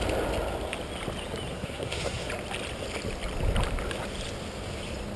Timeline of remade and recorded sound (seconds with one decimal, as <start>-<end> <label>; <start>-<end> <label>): 0.0-1.5 recorded; 1.5-2.3 remade; 2.3-5.2 recorded